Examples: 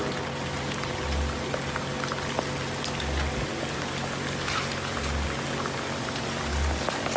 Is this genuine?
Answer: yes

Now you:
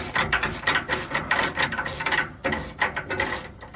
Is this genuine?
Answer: yes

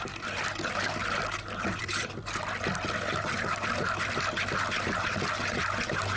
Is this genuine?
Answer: yes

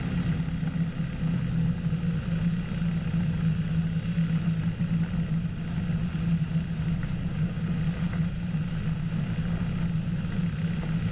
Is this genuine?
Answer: yes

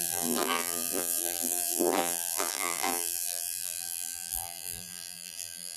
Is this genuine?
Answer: no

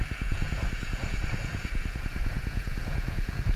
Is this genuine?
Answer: no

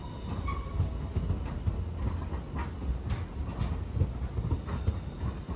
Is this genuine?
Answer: yes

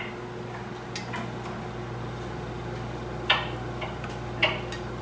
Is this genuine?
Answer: yes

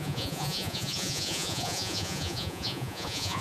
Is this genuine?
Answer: no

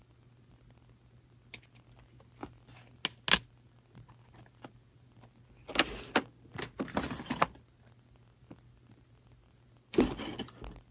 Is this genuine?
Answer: yes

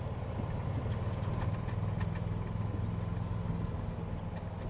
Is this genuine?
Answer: yes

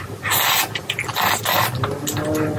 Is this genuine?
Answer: yes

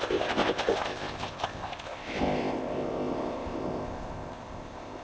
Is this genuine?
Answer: no